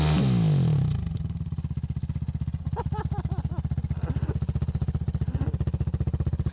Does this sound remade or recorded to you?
recorded